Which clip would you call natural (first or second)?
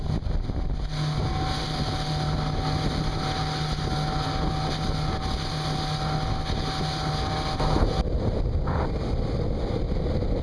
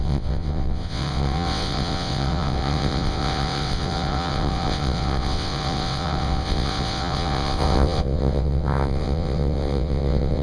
first